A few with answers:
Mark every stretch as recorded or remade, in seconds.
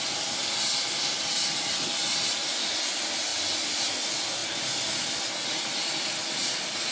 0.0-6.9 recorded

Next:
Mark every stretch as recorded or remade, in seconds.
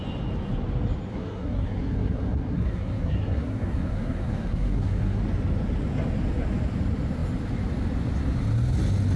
0.0-1.1 recorded; 1.1-5.2 remade; 5.2-9.2 recorded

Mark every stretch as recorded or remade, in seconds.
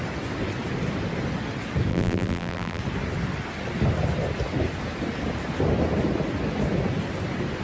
0.0-1.9 recorded; 1.9-2.8 remade; 2.8-7.6 recorded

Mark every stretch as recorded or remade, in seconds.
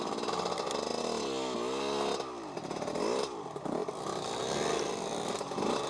0.0-5.9 recorded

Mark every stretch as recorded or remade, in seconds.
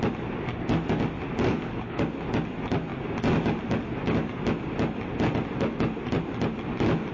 0.0-1.5 recorded; 1.5-2.0 remade; 2.0-7.1 recorded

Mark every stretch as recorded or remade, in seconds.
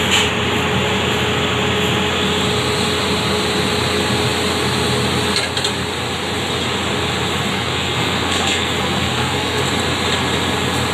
0.0-7.5 recorded; 7.5-9.6 remade; 9.6-10.9 recorded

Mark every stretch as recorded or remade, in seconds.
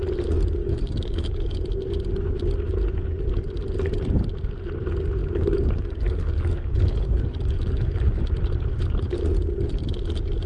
0.0-0.6 recorded; 0.6-1.6 remade; 1.6-5.2 recorded; 5.2-8.2 remade; 8.2-10.5 recorded